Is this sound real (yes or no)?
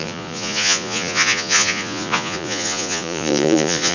no